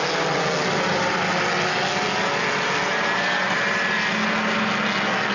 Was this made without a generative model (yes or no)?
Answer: yes